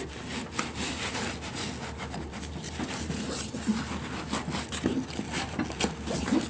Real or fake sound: real